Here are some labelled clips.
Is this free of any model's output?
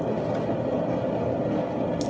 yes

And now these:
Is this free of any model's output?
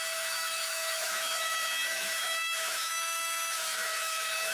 no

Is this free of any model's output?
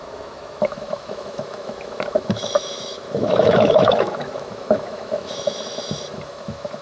no